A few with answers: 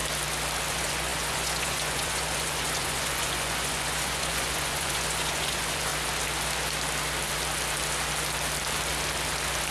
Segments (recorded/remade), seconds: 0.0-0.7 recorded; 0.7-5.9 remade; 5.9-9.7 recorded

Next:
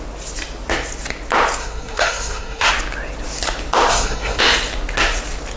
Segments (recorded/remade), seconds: 0.0-1.6 recorded; 1.6-2.7 remade; 2.7-3.9 recorded; 3.9-4.4 remade; 4.4-5.6 recorded